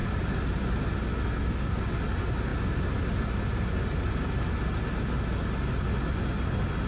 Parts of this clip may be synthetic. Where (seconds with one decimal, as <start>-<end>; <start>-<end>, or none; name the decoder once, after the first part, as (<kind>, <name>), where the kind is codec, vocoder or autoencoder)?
1.3-1.8 (codec, DAC)